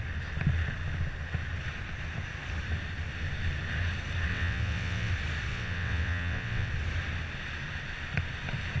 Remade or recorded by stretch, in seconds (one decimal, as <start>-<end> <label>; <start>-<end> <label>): 0.0-4.3 recorded; 4.3-5.1 remade; 5.1-5.5 recorded; 5.5-6.7 remade; 6.7-8.8 recorded